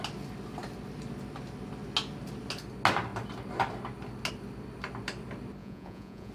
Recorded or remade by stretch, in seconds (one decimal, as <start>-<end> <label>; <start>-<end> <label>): 0.0-5.6 recorded; 5.6-6.3 remade